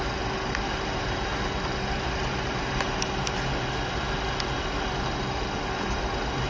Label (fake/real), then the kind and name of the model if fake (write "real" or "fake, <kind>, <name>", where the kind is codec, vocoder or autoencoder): real